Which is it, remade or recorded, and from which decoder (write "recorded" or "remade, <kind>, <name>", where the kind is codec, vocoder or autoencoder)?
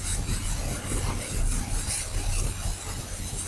recorded